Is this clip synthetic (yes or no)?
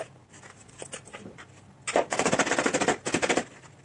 no